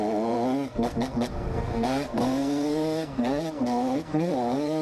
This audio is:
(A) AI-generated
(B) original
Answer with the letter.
A